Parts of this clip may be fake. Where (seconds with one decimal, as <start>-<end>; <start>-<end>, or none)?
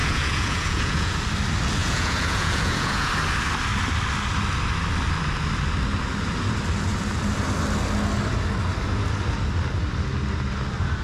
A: 0.0-1.2; 1.8-3.1